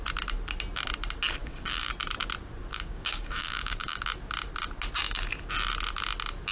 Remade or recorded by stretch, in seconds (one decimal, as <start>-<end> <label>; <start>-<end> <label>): 0.0-1.4 recorded; 1.4-1.9 remade; 1.9-2.7 recorded; 2.7-4.0 remade; 4.0-6.5 recorded